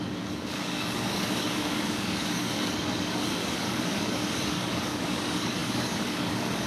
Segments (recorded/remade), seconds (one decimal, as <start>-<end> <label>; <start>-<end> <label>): 0.0-6.7 remade